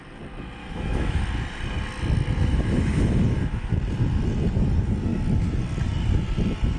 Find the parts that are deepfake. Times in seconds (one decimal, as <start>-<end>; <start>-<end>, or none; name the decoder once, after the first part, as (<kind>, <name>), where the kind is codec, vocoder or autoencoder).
0.6-1.2 (autoencoder, DAC-VAE); 2.5-3.7